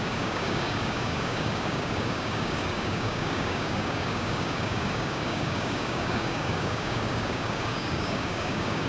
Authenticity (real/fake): fake